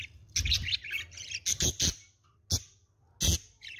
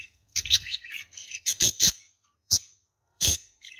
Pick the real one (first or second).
first